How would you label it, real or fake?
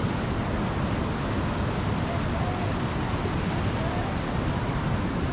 real